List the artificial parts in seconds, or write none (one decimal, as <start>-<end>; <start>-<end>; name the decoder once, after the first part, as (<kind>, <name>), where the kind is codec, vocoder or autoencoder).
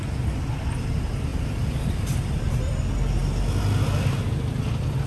1.3-2.4 (vocoder, BigVGAN v2)